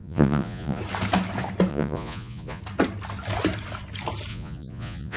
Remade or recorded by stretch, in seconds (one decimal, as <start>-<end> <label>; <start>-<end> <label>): 0.0-0.8 remade; 0.8-1.7 recorded; 1.7-2.6 remade; 2.6-4.3 recorded; 4.3-5.2 remade

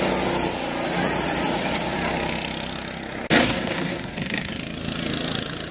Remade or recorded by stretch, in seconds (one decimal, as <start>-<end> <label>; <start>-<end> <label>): 0.0-3.4 recorded; 3.4-4.6 remade; 4.6-5.7 recorded

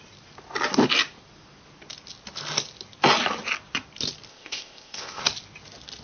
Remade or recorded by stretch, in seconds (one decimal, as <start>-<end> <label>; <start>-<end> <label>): 0.0-4.3 recorded; 4.3-5.2 remade; 5.2-6.0 recorded

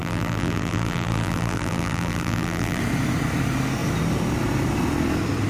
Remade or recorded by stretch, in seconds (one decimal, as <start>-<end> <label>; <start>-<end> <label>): 0.0-2.8 remade; 2.8-5.5 recorded

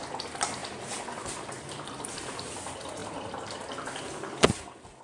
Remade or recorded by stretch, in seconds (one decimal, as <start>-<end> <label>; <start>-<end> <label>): 0.0-3.0 recorded; 3.0-5.0 remade